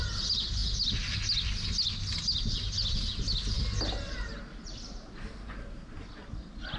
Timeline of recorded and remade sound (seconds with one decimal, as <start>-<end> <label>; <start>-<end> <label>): 0.0-6.8 recorded